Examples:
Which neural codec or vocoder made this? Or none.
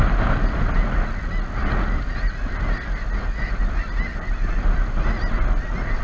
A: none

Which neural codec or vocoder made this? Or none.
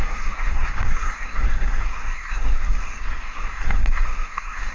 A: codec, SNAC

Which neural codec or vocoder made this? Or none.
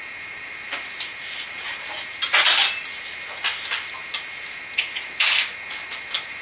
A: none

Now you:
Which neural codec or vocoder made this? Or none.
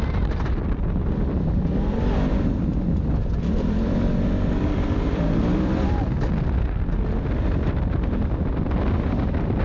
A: vocoder, BigVGAN v2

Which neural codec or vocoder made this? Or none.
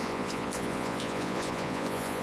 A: vocoder, Vocos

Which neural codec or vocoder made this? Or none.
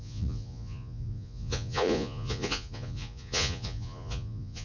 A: vocoder, Vocos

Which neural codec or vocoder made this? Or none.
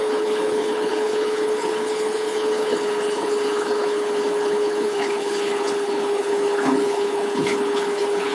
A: codec, HILCodec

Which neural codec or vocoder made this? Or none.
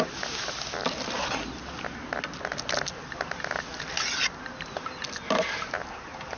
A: none